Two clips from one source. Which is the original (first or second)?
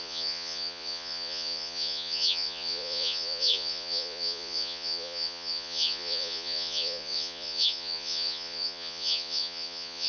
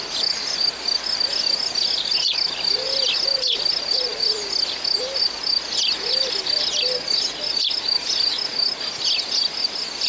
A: second